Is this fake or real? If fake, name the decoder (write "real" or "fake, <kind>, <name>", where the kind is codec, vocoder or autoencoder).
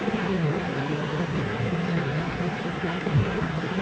fake, codec, SNAC